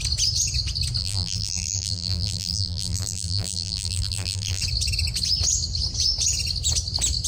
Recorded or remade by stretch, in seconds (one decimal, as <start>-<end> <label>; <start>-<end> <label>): 0.0-1.0 recorded; 1.0-4.6 remade; 4.6-7.3 recorded